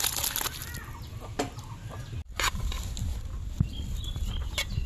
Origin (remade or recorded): recorded